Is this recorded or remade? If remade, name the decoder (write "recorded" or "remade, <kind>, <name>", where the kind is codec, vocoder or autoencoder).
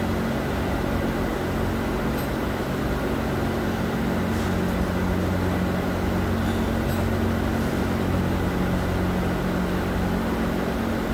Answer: recorded